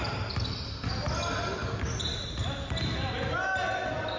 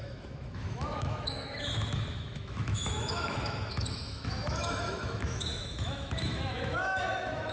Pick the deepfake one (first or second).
second